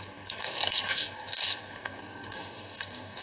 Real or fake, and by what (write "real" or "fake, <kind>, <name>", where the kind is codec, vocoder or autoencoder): fake, codec, SNAC